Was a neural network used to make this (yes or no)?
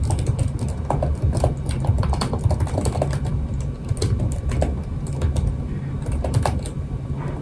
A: yes